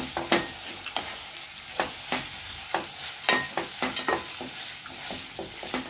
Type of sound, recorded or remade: recorded